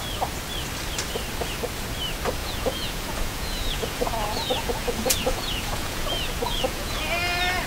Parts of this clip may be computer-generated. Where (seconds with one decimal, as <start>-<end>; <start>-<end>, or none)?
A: 2.4-7.0